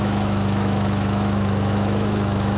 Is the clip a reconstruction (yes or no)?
yes